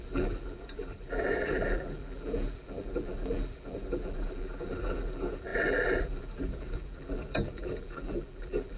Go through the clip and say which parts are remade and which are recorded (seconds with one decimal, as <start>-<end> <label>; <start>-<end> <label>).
0.0-8.8 remade